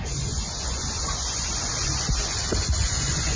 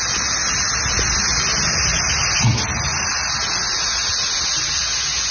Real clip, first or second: second